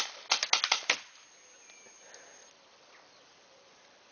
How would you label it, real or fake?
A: real